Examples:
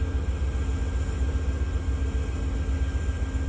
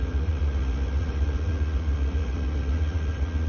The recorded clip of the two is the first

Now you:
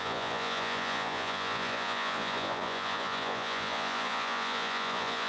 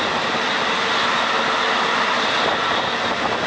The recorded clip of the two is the second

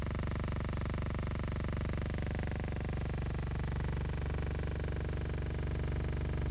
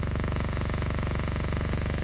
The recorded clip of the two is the first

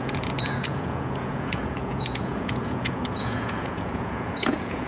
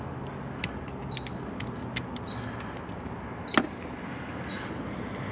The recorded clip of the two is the second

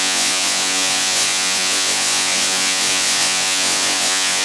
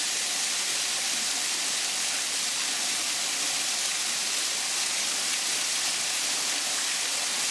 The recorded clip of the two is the second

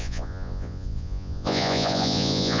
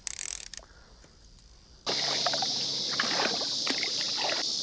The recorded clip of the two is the second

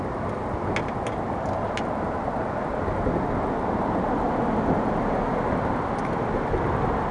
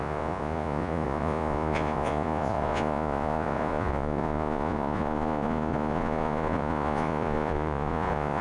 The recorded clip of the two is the first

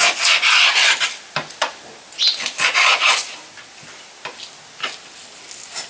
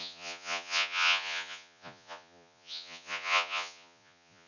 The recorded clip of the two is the first